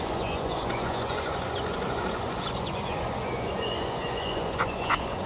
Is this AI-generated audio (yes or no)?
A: yes